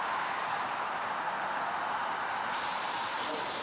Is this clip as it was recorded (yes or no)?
yes